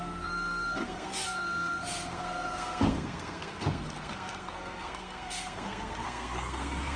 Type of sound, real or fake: fake